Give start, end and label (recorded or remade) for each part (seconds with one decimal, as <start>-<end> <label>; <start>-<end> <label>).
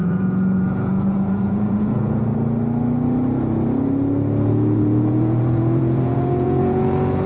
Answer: 0.0-2.3 remade; 2.3-4.5 recorded; 4.5-7.3 remade